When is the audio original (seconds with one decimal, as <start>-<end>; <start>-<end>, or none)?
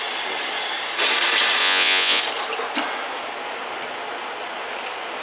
0.0-1.6; 2.2-5.2